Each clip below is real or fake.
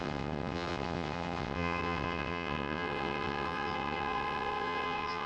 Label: fake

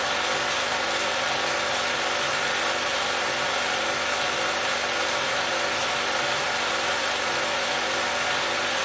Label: real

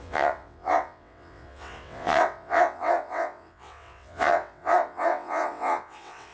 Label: fake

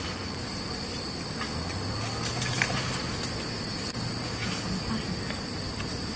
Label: real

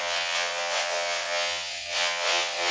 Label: fake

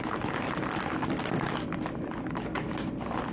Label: real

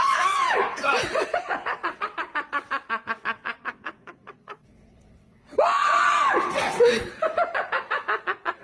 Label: fake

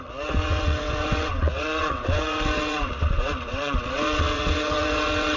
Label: fake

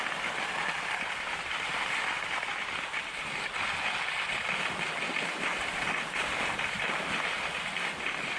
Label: real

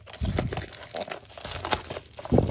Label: real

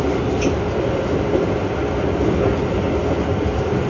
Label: real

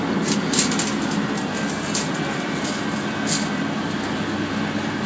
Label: real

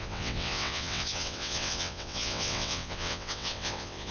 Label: fake